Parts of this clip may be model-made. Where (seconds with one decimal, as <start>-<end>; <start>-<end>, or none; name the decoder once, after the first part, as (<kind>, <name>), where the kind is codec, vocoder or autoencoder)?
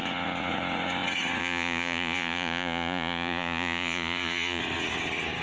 1.4-4.6 (vocoder, Vocos)